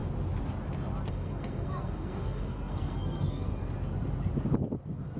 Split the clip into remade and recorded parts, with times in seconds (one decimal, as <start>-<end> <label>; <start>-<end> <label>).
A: 0.0-1.1 recorded; 1.1-3.5 remade; 3.5-5.2 recorded